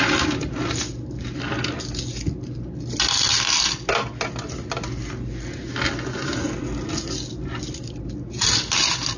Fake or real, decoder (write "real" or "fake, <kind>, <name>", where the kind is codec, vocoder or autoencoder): real